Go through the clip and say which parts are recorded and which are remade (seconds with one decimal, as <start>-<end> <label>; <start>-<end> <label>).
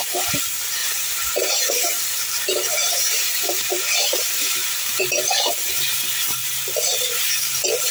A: 0.0-0.8 recorded; 0.8-5.5 remade; 5.5-7.9 recorded